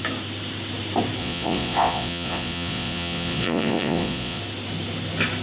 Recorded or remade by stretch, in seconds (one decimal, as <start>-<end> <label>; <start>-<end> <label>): 0.0-1.2 recorded; 1.2-4.4 remade; 4.4-5.4 recorded